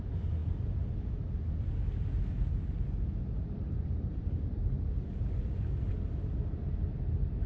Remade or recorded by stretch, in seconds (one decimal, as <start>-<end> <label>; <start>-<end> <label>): 0.0-7.5 recorded